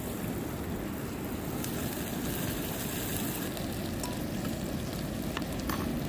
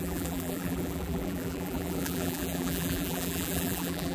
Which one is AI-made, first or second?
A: second